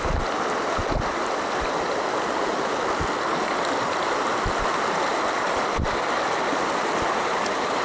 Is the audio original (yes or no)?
yes